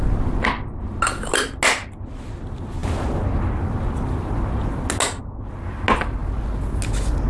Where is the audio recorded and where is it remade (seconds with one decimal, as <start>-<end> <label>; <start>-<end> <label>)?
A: 0.0-7.3 recorded

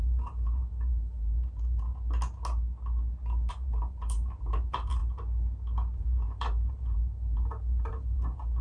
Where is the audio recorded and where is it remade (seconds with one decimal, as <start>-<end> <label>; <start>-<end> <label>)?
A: 0.0-1.9 remade; 1.9-3.5 recorded; 3.5-5.0 remade; 5.0-6.0 recorded; 6.0-8.6 remade

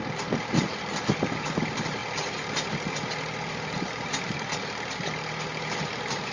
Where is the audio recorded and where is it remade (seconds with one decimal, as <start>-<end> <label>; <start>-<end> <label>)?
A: 0.0-6.3 recorded

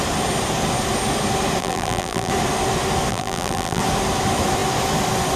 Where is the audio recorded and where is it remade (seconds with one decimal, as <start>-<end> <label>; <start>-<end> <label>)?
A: 0.0-1.6 recorded; 1.6-2.3 remade; 2.3-3.1 recorded; 3.1-3.8 remade; 3.8-5.4 recorded

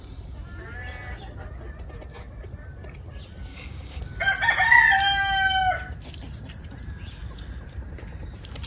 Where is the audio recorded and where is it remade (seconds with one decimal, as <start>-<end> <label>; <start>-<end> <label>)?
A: 0.0-3.5 recorded; 3.5-4.0 remade; 4.0-8.7 recorded